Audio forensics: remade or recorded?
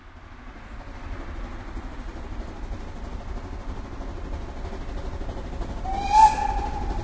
recorded